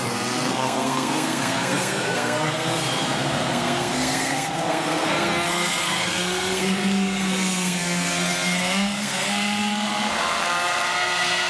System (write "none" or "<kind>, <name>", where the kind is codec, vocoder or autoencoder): codec, SNAC